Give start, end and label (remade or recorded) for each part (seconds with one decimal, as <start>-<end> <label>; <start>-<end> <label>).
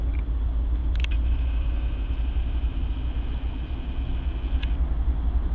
0.0-0.8 recorded; 0.8-2.9 remade; 2.9-5.5 recorded